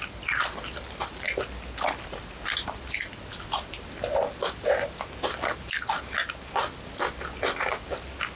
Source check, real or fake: real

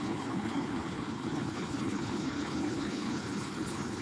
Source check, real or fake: fake